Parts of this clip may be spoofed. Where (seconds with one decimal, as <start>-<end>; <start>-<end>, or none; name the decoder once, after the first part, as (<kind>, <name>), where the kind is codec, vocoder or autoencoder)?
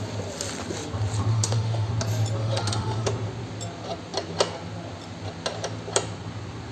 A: 1.3-1.9 (autoencoder, DAC-VAE); 2.4-3.1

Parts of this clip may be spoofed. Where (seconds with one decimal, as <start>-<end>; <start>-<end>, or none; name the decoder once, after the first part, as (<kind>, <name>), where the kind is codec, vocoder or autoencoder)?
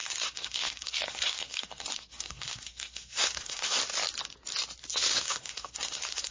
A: 0.0-3.8 (codec, SNAC); 4.9-6.3